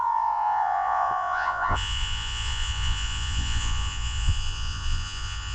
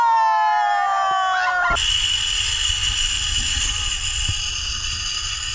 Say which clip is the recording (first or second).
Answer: second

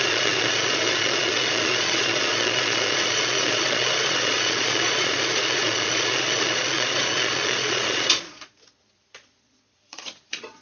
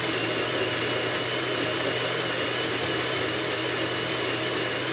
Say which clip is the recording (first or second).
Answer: second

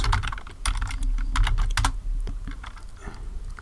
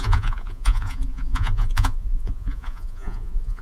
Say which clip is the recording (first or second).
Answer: first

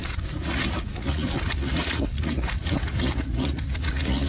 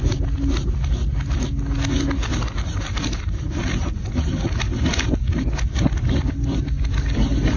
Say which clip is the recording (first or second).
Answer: second